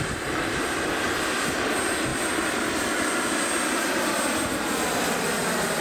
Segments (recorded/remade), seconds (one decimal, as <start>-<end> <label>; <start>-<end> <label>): 0.0-5.8 recorded

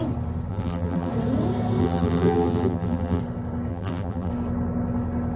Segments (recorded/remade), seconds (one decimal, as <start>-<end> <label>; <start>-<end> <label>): 0.0-0.5 recorded; 0.5-1.1 remade; 1.1-1.8 recorded; 1.8-3.2 remade; 3.2-3.7 recorded; 3.7-4.3 remade; 4.3-5.4 recorded

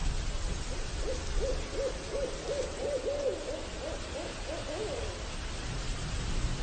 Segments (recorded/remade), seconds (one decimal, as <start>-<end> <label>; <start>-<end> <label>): 0.0-6.6 recorded